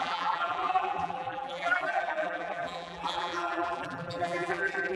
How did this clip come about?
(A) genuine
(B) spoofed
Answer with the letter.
B